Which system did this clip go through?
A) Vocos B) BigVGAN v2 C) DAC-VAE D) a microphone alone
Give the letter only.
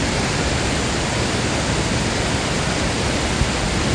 D